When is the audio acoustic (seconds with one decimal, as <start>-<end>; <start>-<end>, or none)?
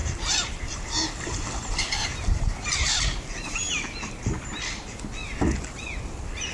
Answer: 3.8-6.5